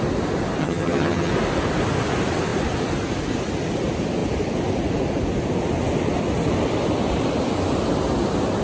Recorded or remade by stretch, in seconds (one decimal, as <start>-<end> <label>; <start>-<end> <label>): 0.0-0.6 recorded; 0.6-1.3 remade; 1.3-8.6 recorded